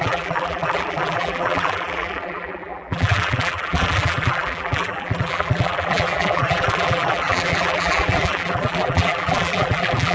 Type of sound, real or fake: fake